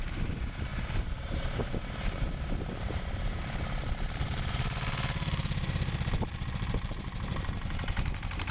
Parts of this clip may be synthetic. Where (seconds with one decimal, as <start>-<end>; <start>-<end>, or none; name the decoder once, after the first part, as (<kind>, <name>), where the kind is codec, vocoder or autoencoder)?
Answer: 0.0-8.5 (vocoder, BigVGAN v2)